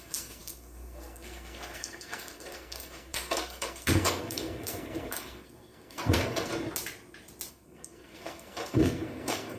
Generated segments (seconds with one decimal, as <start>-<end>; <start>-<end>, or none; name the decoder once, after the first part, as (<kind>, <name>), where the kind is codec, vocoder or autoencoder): 0.0-6.5 (codec, SNAC); 7.5-9.6